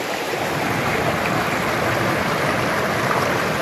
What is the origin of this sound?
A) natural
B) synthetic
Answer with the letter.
A